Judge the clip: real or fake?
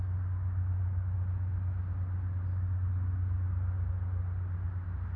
real